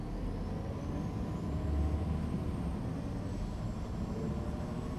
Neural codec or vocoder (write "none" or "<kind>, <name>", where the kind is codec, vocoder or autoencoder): none